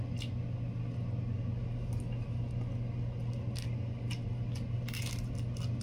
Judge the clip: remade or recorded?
recorded